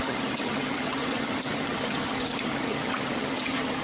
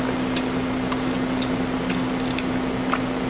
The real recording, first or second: second